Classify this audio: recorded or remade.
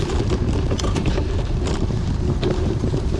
remade